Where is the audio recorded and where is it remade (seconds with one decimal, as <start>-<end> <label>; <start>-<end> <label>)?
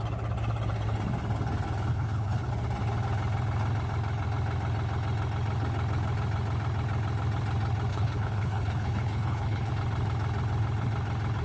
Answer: 0.0-1.9 recorded; 1.9-2.5 remade; 2.5-7.9 recorded; 7.9-9.7 remade; 9.7-11.4 recorded